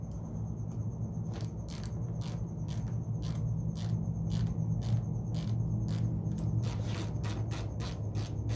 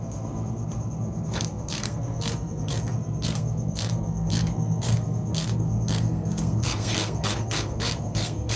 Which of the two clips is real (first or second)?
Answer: first